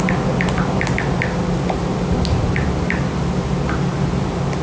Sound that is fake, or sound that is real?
real